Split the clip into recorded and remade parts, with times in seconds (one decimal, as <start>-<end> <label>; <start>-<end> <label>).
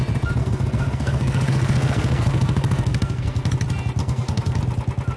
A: 0.0-0.4 recorded; 0.4-3.5 remade; 3.5-4.0 recorded; 4.0-4.6 remade; 4.6-5.2 recorded